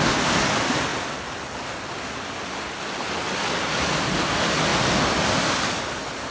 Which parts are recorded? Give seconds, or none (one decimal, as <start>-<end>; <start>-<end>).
0.0-6.3